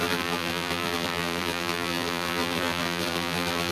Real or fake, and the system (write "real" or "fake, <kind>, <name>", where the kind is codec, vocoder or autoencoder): fake, vocoder, BigVGAN v2